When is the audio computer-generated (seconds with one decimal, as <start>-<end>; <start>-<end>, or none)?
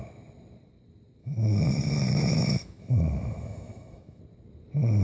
1.2-4.2